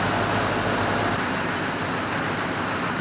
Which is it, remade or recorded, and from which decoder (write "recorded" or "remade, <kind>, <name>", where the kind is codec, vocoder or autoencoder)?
recorded